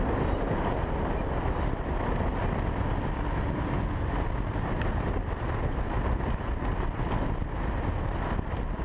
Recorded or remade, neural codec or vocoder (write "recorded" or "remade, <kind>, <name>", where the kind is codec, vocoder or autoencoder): recorded